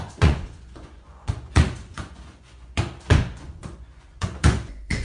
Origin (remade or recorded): remade